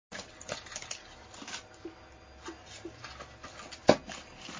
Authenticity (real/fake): real